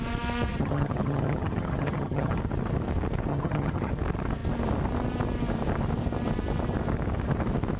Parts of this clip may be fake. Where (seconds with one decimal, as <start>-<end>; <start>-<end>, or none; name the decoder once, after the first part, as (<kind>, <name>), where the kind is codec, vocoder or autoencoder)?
0.5-2.4 (vocoder, HiFi-GAN); 3.3-3.9